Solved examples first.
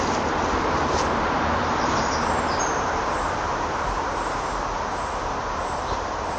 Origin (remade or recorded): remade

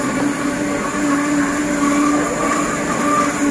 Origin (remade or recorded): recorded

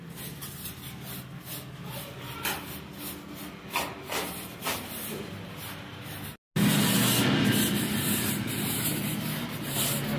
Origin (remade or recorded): recorded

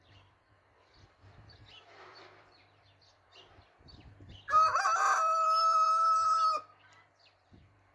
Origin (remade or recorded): remade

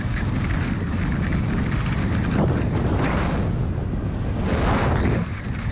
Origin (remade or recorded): recorded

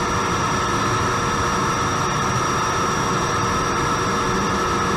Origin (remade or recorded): recorded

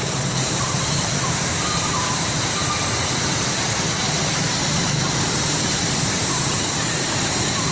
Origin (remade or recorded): remade